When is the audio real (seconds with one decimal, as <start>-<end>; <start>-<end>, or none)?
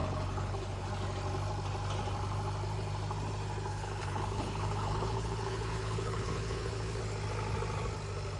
0.9-3.7; 7.0-8.4